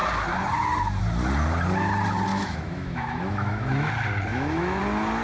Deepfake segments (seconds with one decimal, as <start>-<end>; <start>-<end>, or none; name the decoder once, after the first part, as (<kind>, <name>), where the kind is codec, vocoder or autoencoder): 2.3-3.9 (autoencoder, DAC-VAE); 4.3-4.8